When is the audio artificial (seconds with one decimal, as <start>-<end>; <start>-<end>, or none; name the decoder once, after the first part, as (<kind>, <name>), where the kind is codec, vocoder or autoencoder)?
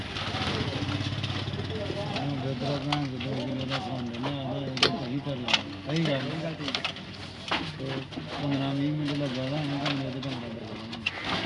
10.6-11.1 (vocoder, Vocos)